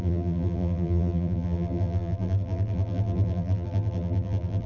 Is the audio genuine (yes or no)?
no